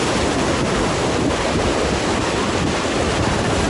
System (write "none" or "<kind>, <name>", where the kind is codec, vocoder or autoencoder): none